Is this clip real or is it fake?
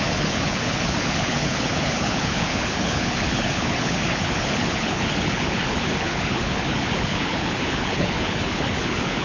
fake